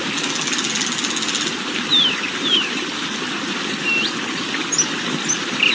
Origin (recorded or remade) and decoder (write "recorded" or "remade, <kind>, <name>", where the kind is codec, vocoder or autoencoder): recorded